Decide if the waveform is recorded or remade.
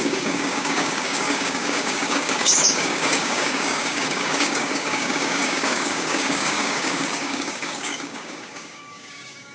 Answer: remade